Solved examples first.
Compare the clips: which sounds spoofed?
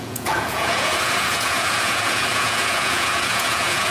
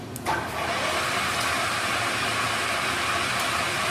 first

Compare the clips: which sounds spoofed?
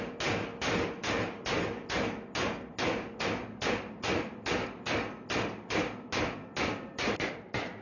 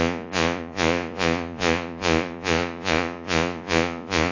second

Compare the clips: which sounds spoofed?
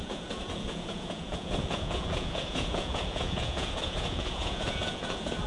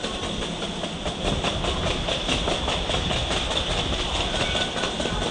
first